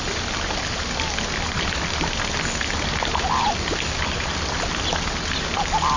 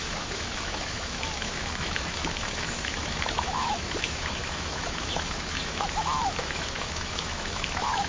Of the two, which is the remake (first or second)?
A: second